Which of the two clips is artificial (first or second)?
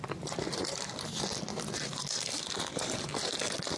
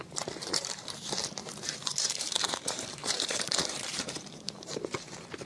second